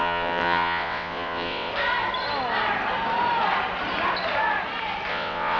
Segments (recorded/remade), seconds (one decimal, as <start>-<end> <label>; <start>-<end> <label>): 0.0-1.7 remade; 1.7-5.1 recorded; 5.1-5.6 remade